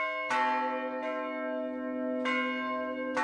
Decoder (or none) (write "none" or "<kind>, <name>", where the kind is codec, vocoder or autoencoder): none